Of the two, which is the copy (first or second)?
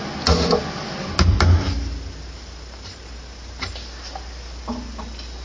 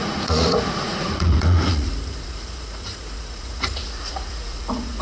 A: second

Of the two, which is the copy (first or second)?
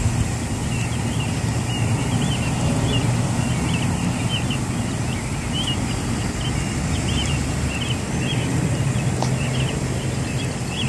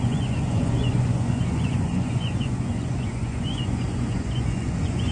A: second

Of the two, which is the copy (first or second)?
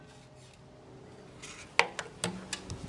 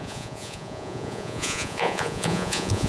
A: second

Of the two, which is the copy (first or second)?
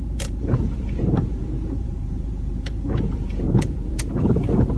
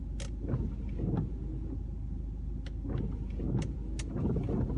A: first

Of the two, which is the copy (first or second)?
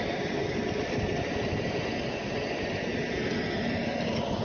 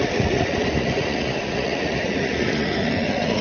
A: second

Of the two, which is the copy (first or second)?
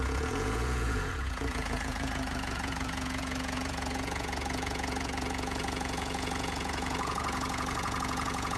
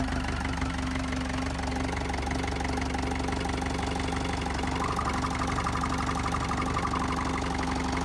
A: first